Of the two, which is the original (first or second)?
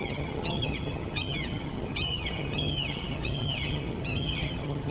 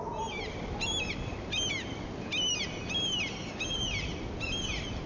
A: second